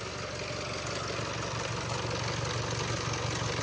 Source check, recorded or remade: recorded